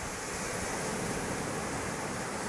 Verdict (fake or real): real